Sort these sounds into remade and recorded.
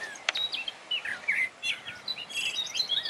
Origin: remade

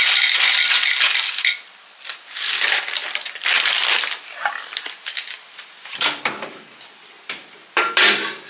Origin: remade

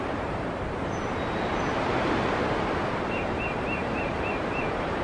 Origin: remade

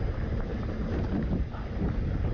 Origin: remade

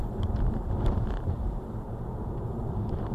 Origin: remade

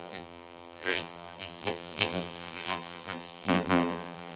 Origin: remade